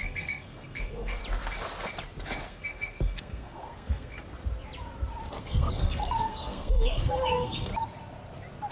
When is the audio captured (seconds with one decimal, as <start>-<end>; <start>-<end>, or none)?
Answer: 1.2-2.5; 4.1-5.4; 7.7-8.7